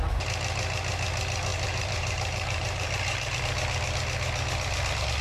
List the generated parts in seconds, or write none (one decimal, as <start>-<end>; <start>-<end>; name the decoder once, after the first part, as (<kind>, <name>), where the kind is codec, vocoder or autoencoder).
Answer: 1.5-3.4 (vocoder, BigVGAN v2)